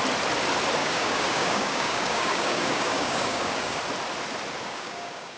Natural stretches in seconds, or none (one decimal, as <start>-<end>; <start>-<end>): 0.0-0.8; 3.8-4.6